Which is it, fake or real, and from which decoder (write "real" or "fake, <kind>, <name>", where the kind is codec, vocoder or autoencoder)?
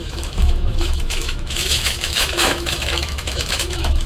fake, autoencoder, DAC-VAE